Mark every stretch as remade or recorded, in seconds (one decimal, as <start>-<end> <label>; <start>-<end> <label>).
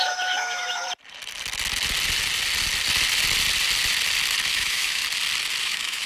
0.0-0.8 remade; 0.8-4.5 recorded; 4.5-5.0 remade; 5.0-5.6 recorded; 5.6-6.1 remade